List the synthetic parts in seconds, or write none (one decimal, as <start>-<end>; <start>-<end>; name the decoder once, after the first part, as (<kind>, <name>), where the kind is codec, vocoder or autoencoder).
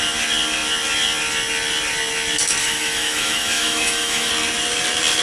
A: 2.6-4.3 (autoencoder, DAC-VAE)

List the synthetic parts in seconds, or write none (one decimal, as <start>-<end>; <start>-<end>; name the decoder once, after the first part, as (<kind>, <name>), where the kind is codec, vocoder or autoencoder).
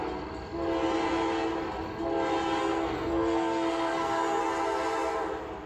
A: 2.6-4.4 (codec, SNAC)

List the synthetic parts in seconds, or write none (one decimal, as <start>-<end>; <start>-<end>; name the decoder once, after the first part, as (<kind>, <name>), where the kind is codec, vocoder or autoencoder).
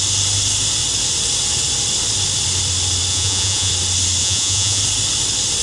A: 3.1-3.7 (vocoder, Vocos); 4.2-4.8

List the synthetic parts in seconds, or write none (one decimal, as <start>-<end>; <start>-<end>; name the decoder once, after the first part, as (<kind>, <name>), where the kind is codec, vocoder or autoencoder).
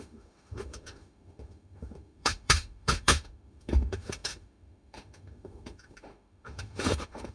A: 0.0-7.3 (autoencoder, DAC-VAE)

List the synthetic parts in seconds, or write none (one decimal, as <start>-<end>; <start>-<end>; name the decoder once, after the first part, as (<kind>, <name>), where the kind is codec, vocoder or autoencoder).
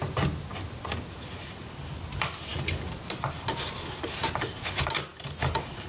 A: none